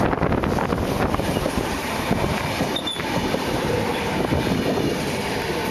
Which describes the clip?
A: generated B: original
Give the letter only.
A